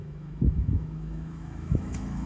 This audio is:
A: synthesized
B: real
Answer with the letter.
A